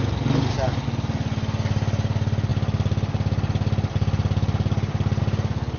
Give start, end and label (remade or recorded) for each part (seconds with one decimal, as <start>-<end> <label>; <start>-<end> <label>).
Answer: 0.0-5.8 recorded

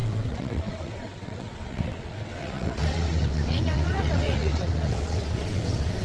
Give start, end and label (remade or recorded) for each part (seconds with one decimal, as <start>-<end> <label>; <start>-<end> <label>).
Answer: 0.0-6.0 remade

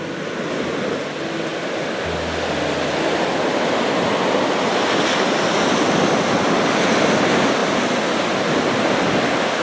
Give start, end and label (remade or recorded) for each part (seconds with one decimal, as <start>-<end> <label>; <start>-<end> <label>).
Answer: 0.0-9.6 recorded

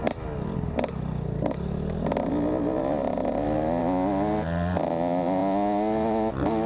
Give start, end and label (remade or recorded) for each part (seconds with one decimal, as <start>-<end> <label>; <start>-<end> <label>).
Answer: 0.0-6.7 recorded

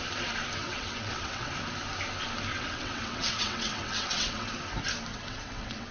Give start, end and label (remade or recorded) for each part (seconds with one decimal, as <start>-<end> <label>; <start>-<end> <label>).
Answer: 0.0-0.6 recorded; 0.6-1.5 remade; 1.5-2.5 recorded; 2.5-4.5 remade; 4.5-5.1 recorded; 5.1-5.9 remade

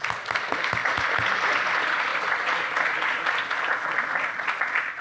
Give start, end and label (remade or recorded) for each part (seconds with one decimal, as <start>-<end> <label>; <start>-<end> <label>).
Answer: 0.0-5.0 recorded

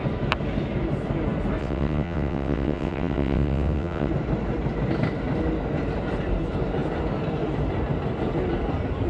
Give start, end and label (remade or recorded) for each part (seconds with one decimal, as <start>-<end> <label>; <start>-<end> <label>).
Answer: 0.0-1.6 recorded; 1.6-4.1 remade; 4.1-9.1 recorded